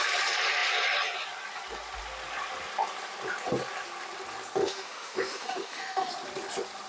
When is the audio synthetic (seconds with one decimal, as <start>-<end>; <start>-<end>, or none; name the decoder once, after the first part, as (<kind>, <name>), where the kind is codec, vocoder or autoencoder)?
4.6-6.1 (autoencoder, DAC-VAE)